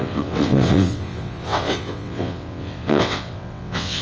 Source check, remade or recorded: remade